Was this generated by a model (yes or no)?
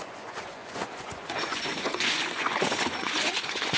yes